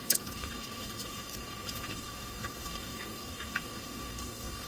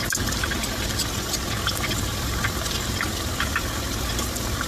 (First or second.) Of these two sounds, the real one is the second